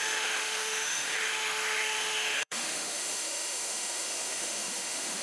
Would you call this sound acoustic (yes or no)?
no